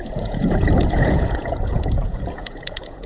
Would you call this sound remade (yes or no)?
yes